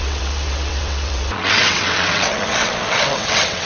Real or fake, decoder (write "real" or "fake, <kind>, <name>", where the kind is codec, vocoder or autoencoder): fake, vocoder, WaveNeXt